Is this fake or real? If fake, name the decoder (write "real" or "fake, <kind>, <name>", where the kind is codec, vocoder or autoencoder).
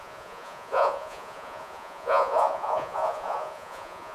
fake, vocoder, Vocos